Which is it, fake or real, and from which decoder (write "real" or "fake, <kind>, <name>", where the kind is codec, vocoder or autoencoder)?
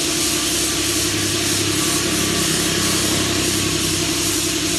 real